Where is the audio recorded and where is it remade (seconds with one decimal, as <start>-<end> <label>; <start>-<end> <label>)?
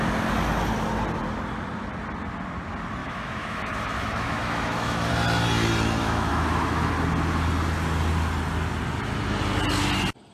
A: 0.0-3.0 recorded; 3.0-5.1 remade; 5.1-6.0 recorded; 6.0-6.9 remade; 6.9-10.3 recorded